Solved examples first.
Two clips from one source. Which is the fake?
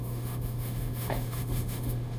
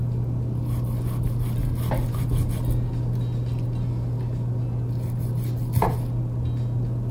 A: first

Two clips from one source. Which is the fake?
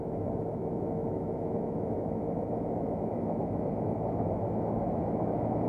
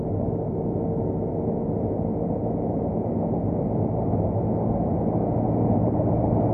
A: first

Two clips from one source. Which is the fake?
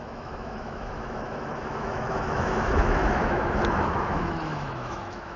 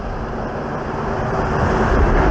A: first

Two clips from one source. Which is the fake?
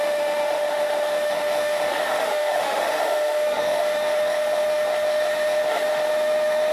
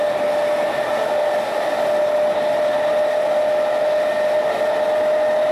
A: first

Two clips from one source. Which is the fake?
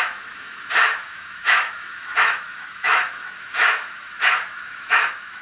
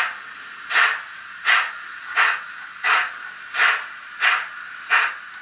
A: first